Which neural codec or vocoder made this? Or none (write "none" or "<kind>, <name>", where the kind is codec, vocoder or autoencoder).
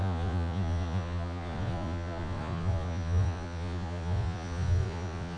vocoder, Vocos